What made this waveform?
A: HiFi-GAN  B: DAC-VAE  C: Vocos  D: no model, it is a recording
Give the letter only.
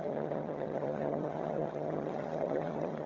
A